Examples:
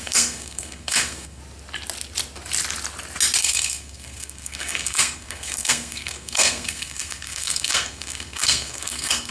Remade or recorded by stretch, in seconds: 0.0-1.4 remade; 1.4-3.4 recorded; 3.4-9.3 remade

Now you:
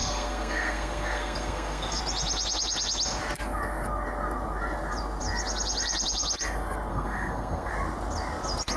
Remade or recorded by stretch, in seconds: 0.0-2.0 remade; 2.0-6.9 recorded; 6.9-7.7 remade; 7.7-8.8 recorded

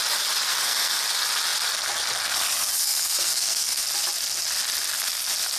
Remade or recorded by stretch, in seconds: 0.0-0.5 recorded; 0.5-1.0 remade; 1.0-2.8 recorded; 2.8-3.8 remade; 3.8-5.6 recorded

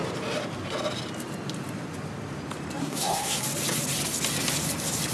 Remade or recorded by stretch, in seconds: 0.0-2.8 recorded; 2.8-3.4 remade; 3.4-5.1 recorded

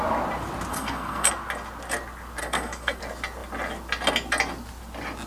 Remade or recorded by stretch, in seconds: 0.0-0.7 recorded; 0.7-1.3 remade; 1.3-2.4 recorded; 2.4-3.0 remade; 3.0-5.3 recorded

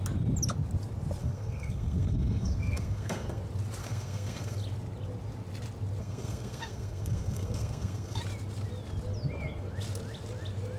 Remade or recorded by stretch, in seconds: 0.0-1.2 recorded; 1.2-3.4 remade; 3.4-3.8 recorded; 3.8-4.6 remade; 4.6-6.0 recorded; 6.0-8.2 remade; 8.2-10.8 recorded

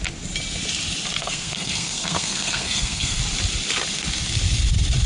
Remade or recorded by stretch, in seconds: 0.0-1.2 recorded; 1.2-3.2 remade; 3.2-5.1 recorded